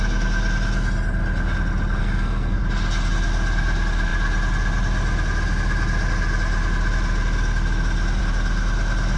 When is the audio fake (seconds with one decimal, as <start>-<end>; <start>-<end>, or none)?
2.0-2.6